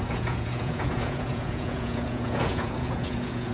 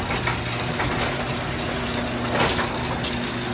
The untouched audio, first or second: second